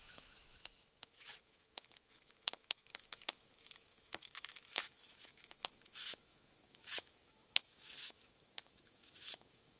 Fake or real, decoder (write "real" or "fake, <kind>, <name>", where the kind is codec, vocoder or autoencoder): fake, autoencoder, DAC-VAE